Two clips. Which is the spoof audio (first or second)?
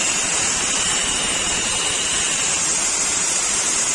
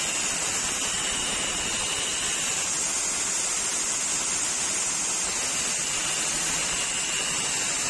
first